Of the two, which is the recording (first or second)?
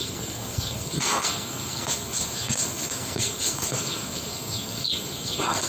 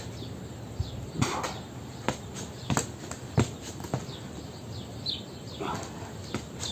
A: second